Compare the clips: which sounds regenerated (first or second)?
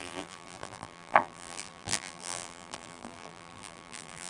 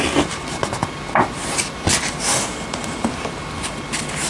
first